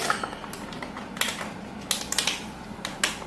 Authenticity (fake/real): real